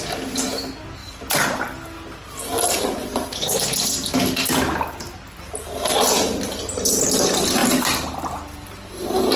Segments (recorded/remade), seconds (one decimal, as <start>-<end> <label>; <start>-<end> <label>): 0.0-9.4 recorded